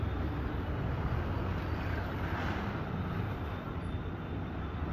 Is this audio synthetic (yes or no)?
no